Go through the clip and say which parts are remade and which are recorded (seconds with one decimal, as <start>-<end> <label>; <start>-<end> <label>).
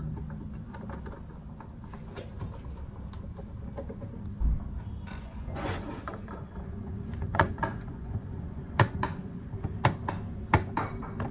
0.0-5.1 recorded; 5.1-9.5 remade; 9.5-11.3 recorded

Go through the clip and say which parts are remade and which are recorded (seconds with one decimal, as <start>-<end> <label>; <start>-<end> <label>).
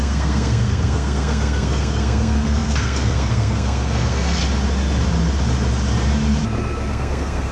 0.0-4.4 remade; 4.4-6.9 recorded; 6.9-7.5 remade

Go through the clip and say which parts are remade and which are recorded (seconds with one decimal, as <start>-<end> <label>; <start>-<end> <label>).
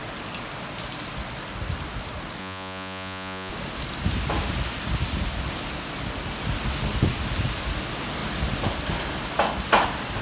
0.0-2.4 recorded; 2.4-3.5 remade; 3.5-10.2 recorded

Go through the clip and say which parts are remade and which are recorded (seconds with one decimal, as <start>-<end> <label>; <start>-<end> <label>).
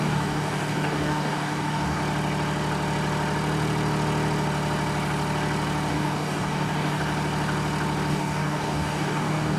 0.0-2.0 remade; 2.0-5.9 recorded; 5.9-7.0 remade; 7.0-8.1 recorded; 8.1-9.6 remade